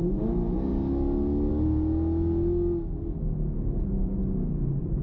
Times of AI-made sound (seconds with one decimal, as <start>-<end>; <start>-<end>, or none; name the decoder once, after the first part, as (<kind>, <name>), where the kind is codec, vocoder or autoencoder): none